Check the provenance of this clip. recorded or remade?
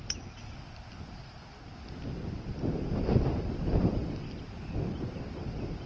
recorded